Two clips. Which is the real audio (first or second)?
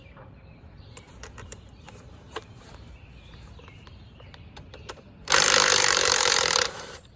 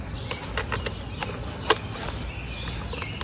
second